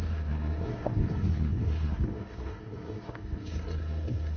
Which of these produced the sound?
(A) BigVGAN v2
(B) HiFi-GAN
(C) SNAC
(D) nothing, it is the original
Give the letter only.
C